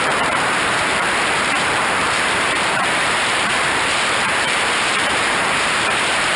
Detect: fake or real fake